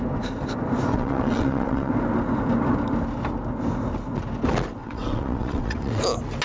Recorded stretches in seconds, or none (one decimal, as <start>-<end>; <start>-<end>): 0.0-0.9; 1.9-4.8; 6.0-6.4